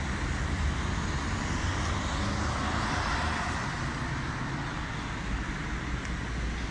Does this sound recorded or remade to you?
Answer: recorded